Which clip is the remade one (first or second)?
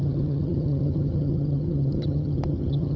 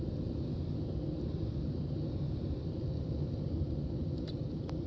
first